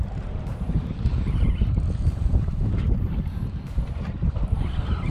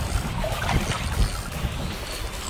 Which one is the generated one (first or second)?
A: first